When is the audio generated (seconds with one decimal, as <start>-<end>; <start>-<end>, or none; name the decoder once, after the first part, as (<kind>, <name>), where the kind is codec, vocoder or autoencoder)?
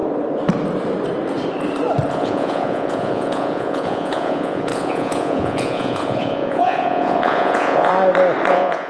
2.1-7.9 (vocoder, Vocos); 8.5-8.9